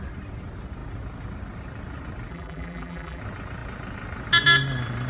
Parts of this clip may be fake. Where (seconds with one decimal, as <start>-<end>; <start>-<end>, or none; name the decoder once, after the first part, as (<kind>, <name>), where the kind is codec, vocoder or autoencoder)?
2.3-3.2 (vocoder, BigVGAN v2)